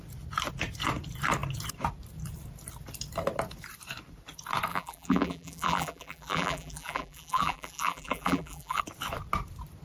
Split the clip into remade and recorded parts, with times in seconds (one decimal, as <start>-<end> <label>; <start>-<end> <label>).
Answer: 0.0-4.7 recorded; 4.7-8.8 remade; 8.8-9.8 recorded